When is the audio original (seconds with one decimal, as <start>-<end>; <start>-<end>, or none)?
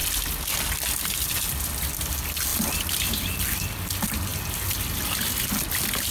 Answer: 0.0-6.1